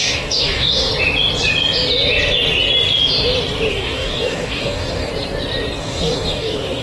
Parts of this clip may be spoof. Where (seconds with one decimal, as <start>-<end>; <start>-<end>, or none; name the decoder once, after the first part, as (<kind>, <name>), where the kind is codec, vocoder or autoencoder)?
0.0-0.9 (codec, DAC); 3.7-5.1; 5.8-6.8